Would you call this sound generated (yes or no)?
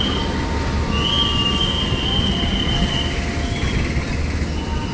no